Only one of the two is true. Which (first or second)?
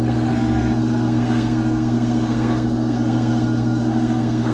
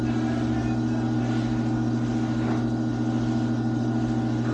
second